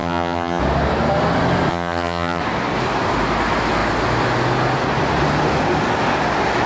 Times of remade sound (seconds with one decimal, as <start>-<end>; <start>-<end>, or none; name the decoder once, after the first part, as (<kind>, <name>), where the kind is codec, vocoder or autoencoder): 0.0-0.6 (vocoder, HiFi-GAN); 1.7-2.4